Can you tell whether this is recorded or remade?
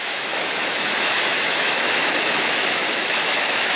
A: remade